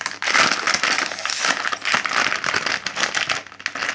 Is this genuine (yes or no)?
yes